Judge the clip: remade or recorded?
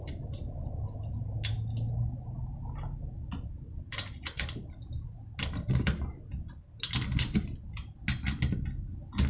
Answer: recorded